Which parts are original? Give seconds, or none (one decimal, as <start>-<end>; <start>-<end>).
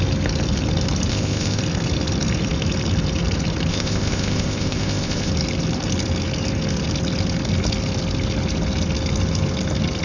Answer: 0.0-1.1; 1.6-3.7; 5.3-10.0